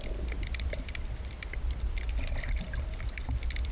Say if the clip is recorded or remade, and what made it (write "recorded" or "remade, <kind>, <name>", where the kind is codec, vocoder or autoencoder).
recorded